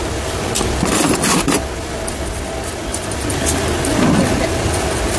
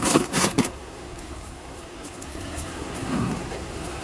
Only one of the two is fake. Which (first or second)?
second